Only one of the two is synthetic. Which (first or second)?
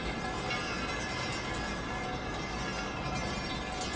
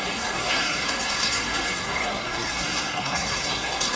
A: second